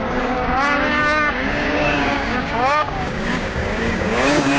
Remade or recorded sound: remade